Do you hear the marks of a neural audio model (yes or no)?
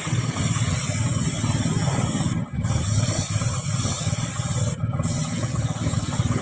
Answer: no